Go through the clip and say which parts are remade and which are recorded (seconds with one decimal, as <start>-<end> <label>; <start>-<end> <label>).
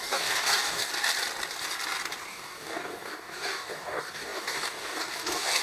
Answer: 0.0-0.9 remade; 0.9-2.3 recorded; 2.3-5.6 remade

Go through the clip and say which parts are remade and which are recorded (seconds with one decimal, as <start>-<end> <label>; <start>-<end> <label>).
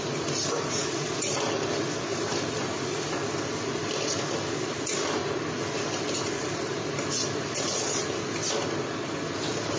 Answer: 0.0-9.8 recorded